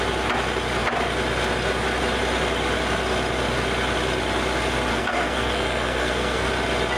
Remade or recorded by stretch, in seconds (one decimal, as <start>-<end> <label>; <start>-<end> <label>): 0.0-4.9 recorded; 4.9-6.5 remade; 6.5-7.0 recorded